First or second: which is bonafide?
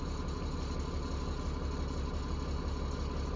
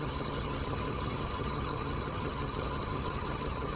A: first